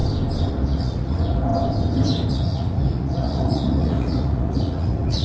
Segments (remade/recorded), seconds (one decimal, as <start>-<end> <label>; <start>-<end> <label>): 0.0-0.5 recorded; 0.5-1.5 remade; 1.5-2.3 recorded; 2.3-5.2 remade